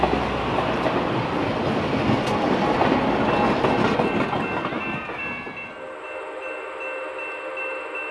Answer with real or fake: real